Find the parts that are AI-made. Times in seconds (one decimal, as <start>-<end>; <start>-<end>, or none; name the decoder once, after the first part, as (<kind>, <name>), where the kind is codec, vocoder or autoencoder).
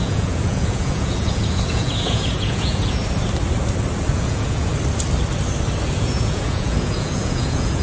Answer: 0.0-3.0 (vocoder, Vocos); 4.1-4.7; 5.9-7.8